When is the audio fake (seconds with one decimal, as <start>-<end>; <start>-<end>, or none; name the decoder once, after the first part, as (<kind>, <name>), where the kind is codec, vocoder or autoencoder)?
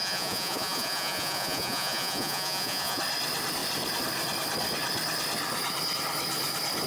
0.0-3.0 (vocoder, Vocos)